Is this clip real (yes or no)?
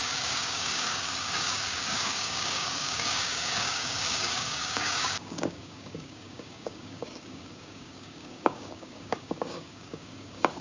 no